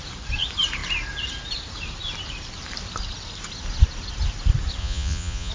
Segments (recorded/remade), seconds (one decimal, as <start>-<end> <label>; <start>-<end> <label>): 0.0-4.8 recorded; 4.8-5.5 remade